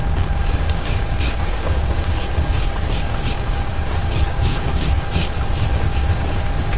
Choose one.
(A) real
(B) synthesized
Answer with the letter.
B